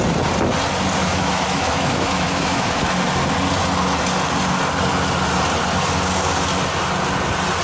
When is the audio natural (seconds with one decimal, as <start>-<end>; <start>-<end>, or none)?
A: 0.0-1.0; 2.8-7.6